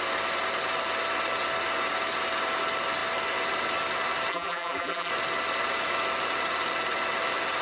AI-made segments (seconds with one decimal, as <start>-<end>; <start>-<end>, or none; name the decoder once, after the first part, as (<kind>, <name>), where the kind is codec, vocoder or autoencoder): 4.3-5.1 (vocoder, BigVGAN v2)